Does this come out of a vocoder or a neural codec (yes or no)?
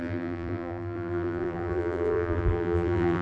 yes